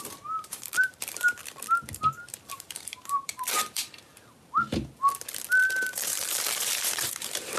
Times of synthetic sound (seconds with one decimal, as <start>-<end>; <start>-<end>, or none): 0.0-1.4; 2.5-4.1; 5.6-7.6